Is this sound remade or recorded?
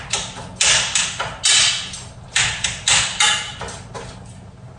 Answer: recorded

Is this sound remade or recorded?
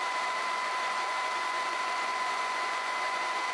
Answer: remade